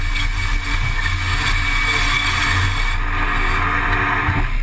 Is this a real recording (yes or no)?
yes